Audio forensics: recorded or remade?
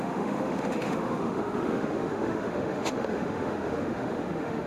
remade